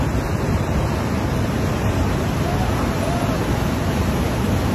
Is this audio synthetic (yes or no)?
no